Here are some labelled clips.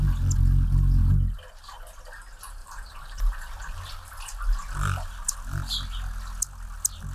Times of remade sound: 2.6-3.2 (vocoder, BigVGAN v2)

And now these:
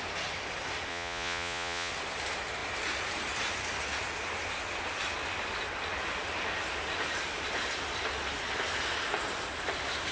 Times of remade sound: 0.9-1.9 (vocoder, Vocos)

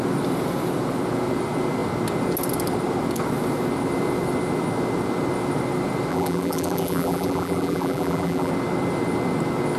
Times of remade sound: 6.1-8.5 (vocoder, BigVGAN v2)